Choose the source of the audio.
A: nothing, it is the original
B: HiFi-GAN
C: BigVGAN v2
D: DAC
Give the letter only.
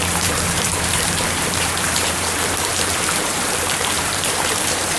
C